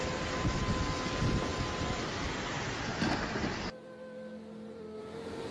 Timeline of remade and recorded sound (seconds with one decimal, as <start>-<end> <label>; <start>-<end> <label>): 0.0-5.5 recorded